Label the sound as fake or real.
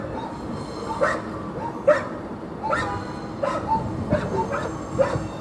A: real